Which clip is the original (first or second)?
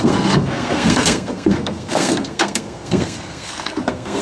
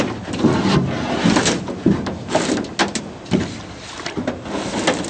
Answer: second